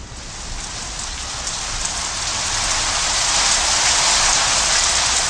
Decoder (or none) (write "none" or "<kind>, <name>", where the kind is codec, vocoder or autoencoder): none